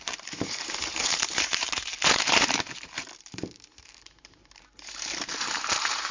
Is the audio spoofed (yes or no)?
yes